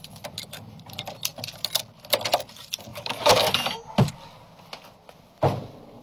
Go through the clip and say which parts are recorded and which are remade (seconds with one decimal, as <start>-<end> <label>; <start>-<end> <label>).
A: 0.0-2.9 recorded; 2.9-3.5 remade; 3.5-6.0 recorded